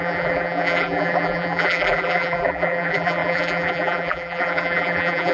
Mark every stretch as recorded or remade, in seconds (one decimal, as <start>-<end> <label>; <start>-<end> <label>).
0.0-5.3 remade